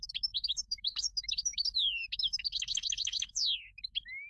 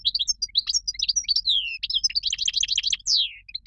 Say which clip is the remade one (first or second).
first